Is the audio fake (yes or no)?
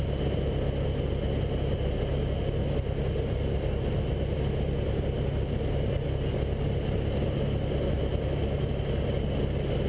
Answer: no